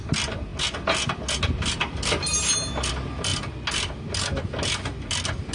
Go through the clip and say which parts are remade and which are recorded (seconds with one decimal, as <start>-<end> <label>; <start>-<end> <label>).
0.0-5.5 recorded